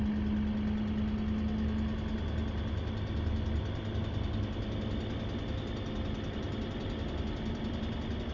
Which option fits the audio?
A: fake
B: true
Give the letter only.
B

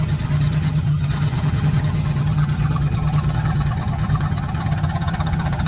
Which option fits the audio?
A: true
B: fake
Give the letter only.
B